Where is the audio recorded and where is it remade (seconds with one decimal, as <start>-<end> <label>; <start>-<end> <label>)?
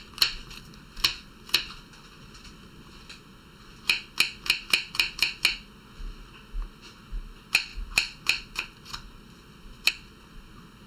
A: 0.0-10.9 recorded